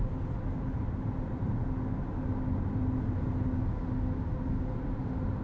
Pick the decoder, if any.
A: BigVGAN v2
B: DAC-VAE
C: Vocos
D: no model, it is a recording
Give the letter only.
D